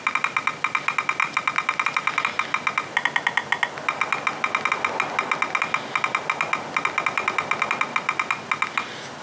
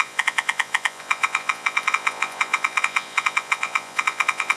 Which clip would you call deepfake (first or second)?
second